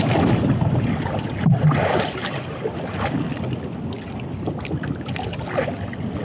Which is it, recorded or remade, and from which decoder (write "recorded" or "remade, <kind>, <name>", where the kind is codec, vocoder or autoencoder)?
recorded